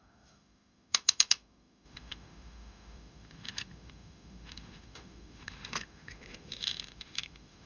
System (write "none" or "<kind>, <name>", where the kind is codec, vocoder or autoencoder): autoencoder, DAC-VAE